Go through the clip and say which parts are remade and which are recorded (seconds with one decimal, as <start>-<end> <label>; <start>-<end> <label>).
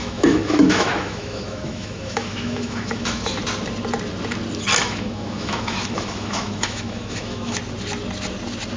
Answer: 0.0-3.4 remade; 3.4-4.8 recorded; 4.8-7.6 remade; 7.6-8.8 recorded